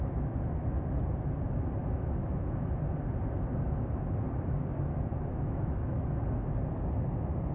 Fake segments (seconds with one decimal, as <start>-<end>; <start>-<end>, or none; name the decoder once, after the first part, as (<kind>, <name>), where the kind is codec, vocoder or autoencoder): 1.8-2.7 (autoencoder, DAC-VAE); 5.3-6.0